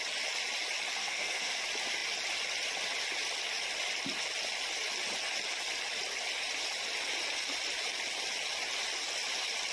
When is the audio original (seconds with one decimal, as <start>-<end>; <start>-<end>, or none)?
0.0-1.0; 1.6-9.7